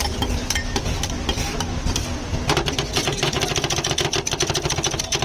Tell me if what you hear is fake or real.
real